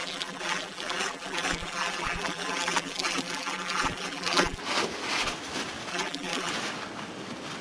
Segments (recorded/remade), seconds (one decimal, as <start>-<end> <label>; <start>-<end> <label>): 0.0-4.6 remade; 4.6-5.9 recorded; 5.9-6.5 remade; 6.5-7.6 recorded